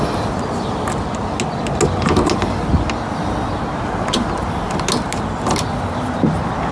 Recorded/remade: recorded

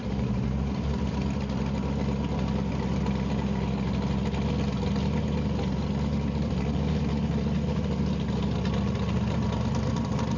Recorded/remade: recorded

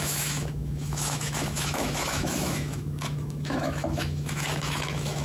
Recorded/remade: remade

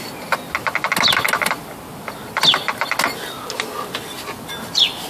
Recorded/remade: recorded